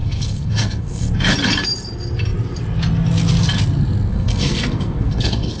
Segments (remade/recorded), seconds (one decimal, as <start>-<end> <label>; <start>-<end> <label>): 0.0-1.1 remade; 1.1-4.1 recorded; 4.1-5.6 remade